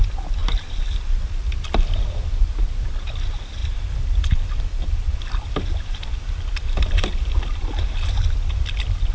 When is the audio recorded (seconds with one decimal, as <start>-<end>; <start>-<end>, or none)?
0.0-9.1